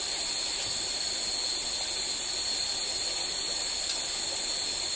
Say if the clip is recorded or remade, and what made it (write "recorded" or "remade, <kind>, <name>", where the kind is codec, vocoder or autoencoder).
recorded